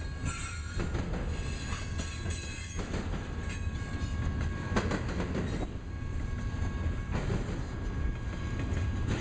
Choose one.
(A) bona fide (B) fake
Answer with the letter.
A